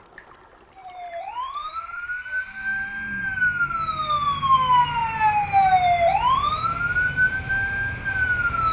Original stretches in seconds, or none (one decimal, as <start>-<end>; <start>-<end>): 0.0-0.8; 2.9-5.0; 7.5-8.7